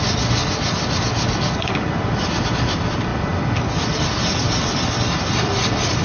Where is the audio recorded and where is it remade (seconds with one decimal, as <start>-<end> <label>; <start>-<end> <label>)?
0.0-6.0 recorded